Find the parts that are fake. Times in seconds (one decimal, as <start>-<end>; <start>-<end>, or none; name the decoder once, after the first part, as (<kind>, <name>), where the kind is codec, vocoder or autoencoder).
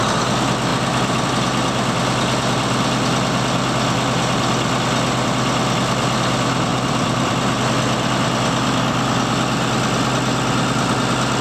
0.7-1.3 (vocoder, BigVGAN v2); 6.7-7.6